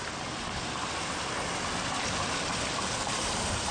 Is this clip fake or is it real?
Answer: real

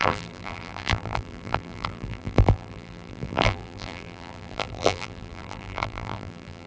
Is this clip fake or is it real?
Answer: fake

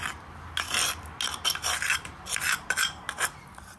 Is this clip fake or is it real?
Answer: real